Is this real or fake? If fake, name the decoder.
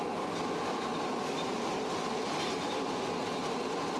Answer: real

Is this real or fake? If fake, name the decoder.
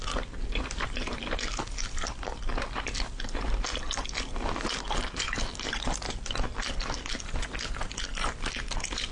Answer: real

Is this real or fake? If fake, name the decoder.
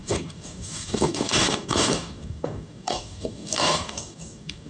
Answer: fake, codec, DAC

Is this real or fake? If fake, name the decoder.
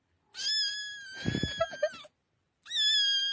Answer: real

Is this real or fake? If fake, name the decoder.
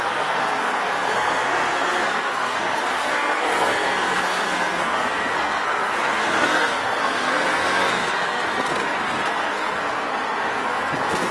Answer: fake, codec, SNAC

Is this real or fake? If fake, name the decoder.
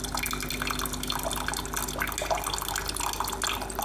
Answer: real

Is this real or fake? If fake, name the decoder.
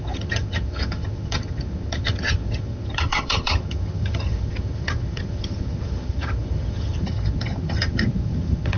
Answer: fake, vocoder, HiFi-GAN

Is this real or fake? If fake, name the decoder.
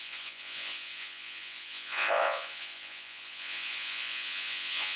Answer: fake, vocoder, Vocos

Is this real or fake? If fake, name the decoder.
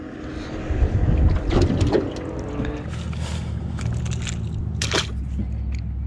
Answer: real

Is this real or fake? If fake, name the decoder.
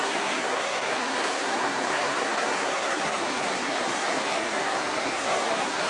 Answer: fake, codec, SNAC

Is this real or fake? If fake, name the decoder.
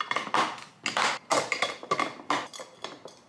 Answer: real